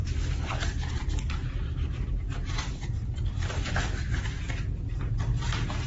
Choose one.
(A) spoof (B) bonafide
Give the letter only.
A